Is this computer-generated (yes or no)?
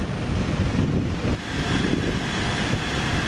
no